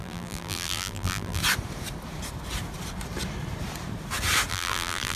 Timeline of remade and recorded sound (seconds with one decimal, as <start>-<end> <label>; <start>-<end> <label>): 0.0-1.4 remade; 1.4-4.5 recorded; 4.5-5.2 remade